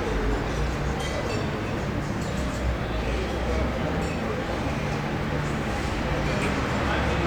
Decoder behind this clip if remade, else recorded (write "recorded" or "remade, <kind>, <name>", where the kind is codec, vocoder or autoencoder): recorded